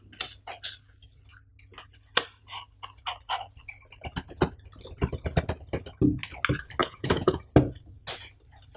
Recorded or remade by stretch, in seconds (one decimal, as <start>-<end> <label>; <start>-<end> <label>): 0.0-6.8 recorded; 6.8-7.4 remade; 7.4-8.8 recorded